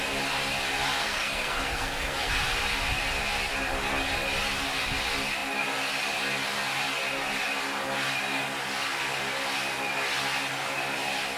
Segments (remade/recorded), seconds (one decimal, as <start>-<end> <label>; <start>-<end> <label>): 0.0-1.0 recorded; 1.0-2.3 remade; 2.3-11.4 recorded